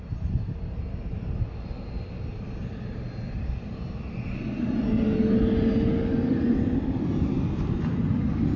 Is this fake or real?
real